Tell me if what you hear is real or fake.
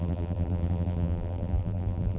fake